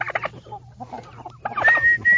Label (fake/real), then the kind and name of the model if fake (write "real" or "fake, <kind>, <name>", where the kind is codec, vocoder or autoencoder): real